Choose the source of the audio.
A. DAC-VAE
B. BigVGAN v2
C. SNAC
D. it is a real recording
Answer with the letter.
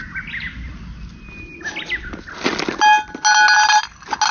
D